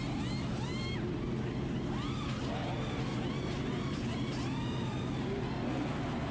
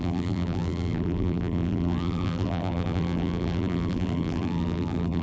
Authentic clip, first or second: first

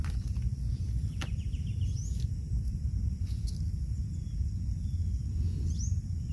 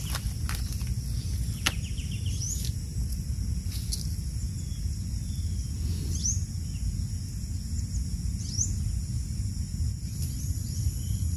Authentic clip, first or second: second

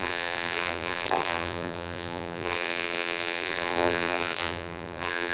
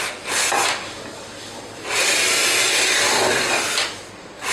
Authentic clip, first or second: second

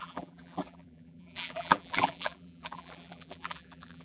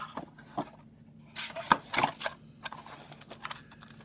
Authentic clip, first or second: second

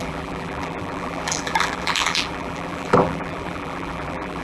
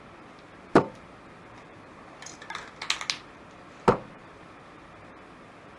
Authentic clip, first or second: second